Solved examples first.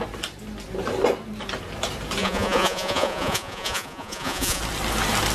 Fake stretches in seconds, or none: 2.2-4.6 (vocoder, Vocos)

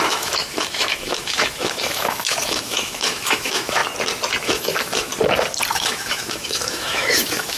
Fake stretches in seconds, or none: 0.0-3.8 (autoencoder, DAC-VAE); 4.4-5.1; 5.7-7.6

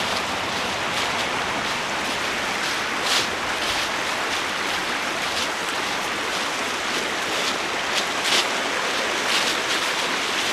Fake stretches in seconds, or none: none

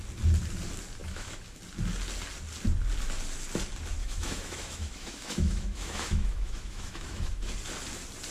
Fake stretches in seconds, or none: 1.0-1.6 (autoencoder, DAC-VAE); 4.0-7.5

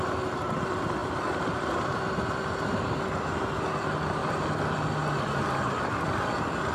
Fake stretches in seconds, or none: none

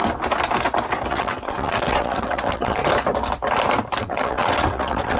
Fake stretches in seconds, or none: 1.1-2.8 (vocoder, WaveNeXt); 4.0-5.2

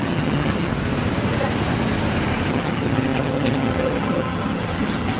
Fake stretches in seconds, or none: 0.0-0.7 (vocoder, HiFi-GAN); 2.5-5.2